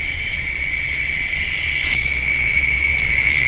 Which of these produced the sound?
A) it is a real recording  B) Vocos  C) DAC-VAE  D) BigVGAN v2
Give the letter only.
B